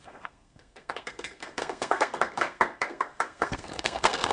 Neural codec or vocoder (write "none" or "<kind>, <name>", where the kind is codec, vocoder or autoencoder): codec, SNAC